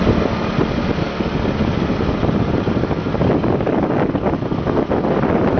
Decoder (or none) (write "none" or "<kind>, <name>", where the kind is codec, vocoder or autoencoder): none